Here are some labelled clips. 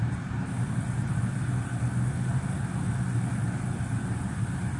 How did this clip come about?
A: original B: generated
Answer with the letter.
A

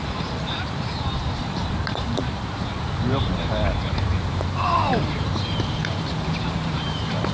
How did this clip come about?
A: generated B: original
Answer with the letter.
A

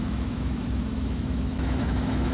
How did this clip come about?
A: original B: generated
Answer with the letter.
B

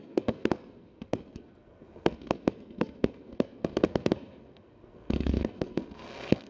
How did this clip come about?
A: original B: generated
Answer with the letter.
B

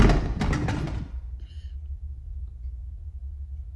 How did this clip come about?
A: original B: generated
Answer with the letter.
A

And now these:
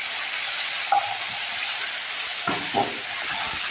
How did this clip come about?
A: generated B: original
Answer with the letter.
B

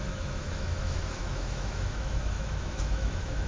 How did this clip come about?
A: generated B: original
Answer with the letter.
A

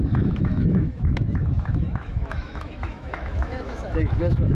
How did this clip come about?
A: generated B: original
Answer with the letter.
A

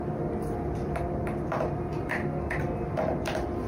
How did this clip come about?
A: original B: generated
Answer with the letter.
A